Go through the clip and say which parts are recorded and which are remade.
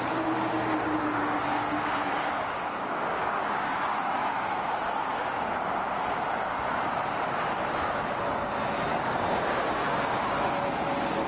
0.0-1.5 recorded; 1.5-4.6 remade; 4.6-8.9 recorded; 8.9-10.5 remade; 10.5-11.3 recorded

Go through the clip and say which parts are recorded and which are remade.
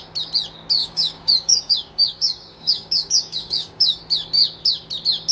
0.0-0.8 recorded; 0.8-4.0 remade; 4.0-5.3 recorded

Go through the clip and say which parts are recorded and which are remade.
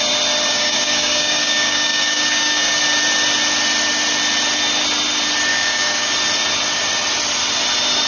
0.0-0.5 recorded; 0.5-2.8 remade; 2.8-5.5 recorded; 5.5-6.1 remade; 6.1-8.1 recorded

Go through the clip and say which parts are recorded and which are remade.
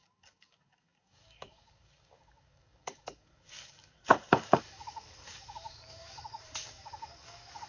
0.0-7.7 remade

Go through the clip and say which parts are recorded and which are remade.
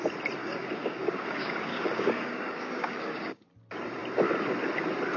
0.0-0.4 recorded; 0.4-3.5 remade; 3.5-5.2 recorded